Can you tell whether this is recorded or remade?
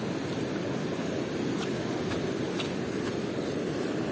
recorded